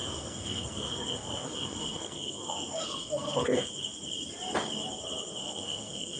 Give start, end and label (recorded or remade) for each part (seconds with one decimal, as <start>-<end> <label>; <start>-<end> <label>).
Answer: 0.0-3.7 remade; 3.7-5.4 recorded; 5.4-6.2 remade